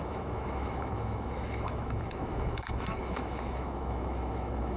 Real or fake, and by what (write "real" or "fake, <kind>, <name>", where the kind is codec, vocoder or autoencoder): fake, autoencoder, DAC-VAE